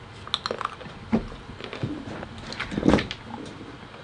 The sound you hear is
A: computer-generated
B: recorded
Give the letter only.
B